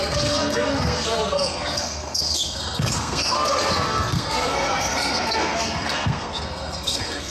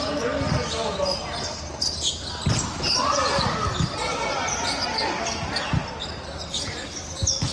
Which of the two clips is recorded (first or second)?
second